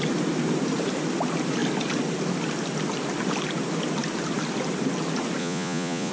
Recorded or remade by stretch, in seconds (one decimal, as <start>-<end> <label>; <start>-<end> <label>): 0.0-5.4 recorded; 5.4-6.1 remade